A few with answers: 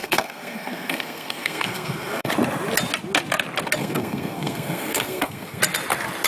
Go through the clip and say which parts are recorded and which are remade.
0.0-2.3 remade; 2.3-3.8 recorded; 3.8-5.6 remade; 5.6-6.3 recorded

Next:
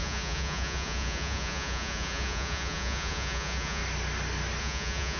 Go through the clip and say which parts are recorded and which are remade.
0.0-3.8 remade; 3.8-4.6 recorded; 4.6-5.2 remade